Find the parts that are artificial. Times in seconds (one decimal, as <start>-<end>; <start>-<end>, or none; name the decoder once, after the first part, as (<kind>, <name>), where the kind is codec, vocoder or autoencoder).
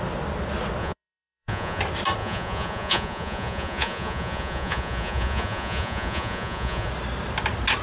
0.8-1.8 (vocoder, Vocos); 2.2-6.9